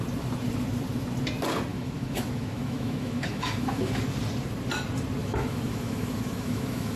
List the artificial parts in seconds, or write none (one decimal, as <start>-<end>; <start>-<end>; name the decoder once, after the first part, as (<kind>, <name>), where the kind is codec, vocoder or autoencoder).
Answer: 1.7-4.0 (autoencoder, DAC-VAE); 5.2-7.0